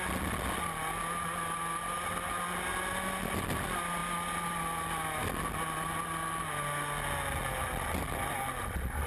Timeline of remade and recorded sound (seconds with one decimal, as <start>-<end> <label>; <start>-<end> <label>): 0.0-9.1 recorded